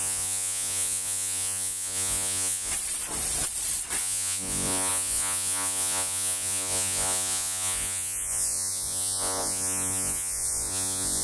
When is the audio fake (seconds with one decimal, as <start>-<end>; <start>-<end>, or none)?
0.0-2.7; 4.0-11.2